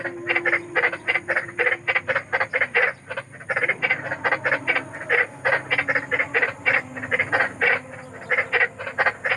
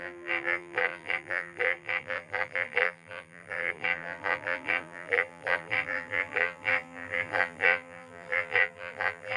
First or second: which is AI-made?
second